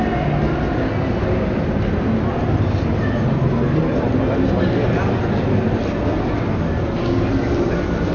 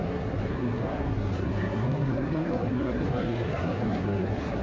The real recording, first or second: first